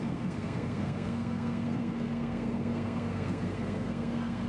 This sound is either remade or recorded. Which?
remade